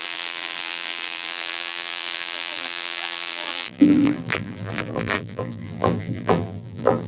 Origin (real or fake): fake